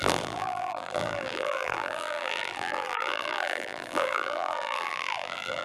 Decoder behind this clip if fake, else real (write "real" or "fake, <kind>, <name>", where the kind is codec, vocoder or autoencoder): fake, vocoder, BigVGAN v2